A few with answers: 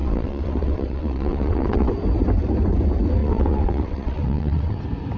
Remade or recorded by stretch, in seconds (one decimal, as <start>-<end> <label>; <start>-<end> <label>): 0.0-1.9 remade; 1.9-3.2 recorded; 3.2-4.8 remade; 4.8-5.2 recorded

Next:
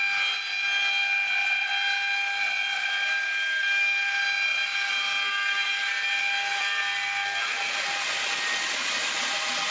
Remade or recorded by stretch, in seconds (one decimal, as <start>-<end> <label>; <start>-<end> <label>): 0.0-9.7 recorded

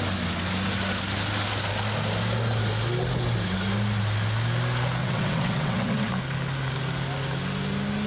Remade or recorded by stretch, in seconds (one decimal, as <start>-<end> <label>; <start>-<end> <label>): 0.0-5.0 recorded; 5.0-6.1 remade; 6.1-8.1 recorded

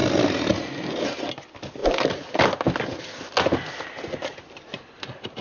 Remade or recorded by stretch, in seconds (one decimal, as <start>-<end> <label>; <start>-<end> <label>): 0.0-5.4 recorded